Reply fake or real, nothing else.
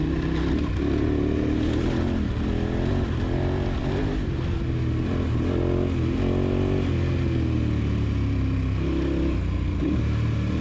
real